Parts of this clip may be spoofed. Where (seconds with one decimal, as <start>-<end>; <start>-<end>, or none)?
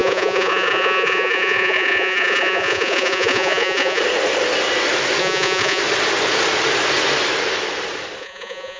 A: 0.0-4.0; 5.2-5.8; 8.2-8.8